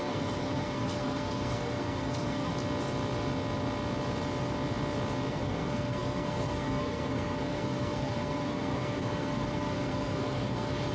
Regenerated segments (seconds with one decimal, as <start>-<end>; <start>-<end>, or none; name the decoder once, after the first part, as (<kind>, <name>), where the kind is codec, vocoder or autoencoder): 0.0-2.5 (codec, SNAC); 5.3-10.9